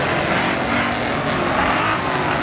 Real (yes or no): yes